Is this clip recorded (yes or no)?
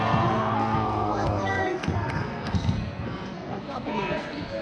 no